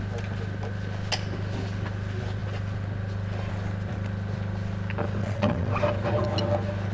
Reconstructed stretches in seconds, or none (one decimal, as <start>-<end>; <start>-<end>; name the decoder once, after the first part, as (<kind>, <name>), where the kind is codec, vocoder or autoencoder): 5.2-5.7 (vocoder, WaveNeXt)

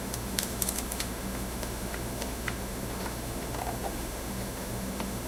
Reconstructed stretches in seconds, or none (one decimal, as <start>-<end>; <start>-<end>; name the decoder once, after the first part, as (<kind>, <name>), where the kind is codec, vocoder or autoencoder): 0.0-5.3 (autoencoder, DAC-VAE)

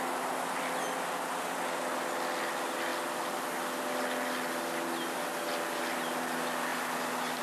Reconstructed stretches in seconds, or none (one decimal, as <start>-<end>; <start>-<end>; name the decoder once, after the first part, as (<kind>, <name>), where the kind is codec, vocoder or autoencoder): none

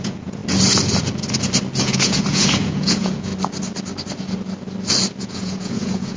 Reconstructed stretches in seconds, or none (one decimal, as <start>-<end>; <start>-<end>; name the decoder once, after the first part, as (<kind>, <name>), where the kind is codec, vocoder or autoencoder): 0.0-0.4 (vocoder, Vocos); 1.8-3.3; 5.2-6.2

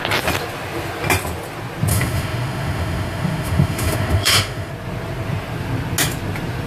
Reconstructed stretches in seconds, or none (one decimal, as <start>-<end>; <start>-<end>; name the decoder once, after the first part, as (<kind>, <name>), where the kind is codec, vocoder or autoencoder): 1.9-4.7 (autoencoder, DAC-VAE)

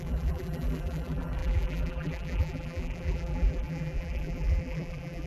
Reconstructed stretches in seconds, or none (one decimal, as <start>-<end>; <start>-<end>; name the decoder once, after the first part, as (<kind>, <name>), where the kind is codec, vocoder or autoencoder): 0.0-5.3 (vocoder, BigVGAN v2)

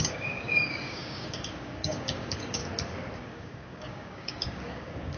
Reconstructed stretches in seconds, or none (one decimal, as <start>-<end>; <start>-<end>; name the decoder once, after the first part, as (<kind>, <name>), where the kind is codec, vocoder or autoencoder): 0.0-2.6 (codec, DAC); 3.2-5.2